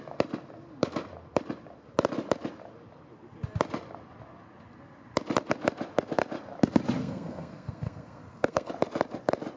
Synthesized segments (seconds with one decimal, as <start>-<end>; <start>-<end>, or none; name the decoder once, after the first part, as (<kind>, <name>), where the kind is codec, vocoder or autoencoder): 7.0-8.7 (codec, SNAC)